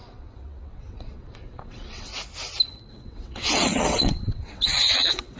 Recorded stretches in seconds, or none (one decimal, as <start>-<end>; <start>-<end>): 2.1-2.9

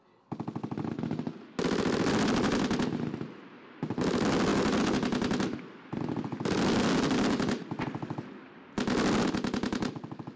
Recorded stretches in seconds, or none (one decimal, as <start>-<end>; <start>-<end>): 0.0-10.4

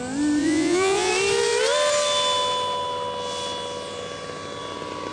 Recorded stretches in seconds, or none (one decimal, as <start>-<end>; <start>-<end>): 0.0-0.4; 1.1-5.1